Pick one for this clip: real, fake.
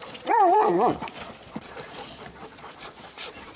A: fake